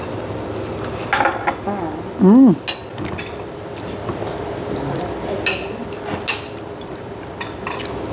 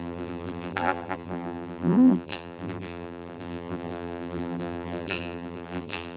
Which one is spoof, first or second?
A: second